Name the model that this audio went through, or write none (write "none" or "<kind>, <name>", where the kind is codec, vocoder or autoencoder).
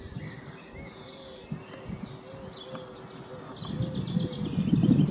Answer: none